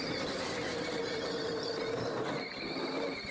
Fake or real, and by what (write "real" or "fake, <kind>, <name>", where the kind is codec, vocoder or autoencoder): real